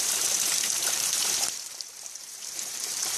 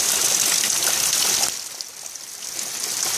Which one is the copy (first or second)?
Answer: first